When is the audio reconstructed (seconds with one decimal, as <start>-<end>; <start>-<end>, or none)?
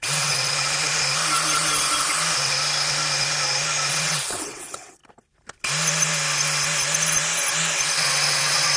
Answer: 0.0-0.5; 3.9-5.0; 8.0-8.8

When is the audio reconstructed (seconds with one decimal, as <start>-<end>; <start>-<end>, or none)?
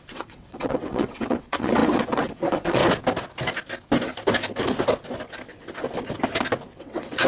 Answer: 0.0-2.8; 6.8-7.3